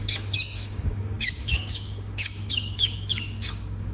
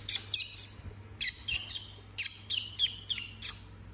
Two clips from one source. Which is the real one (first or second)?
second